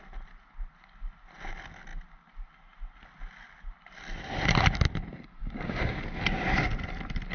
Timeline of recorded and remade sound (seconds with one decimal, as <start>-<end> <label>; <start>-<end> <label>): 0.0-5.4 recorded; 5.4-6.0 remade; 6.0-7.3 recorded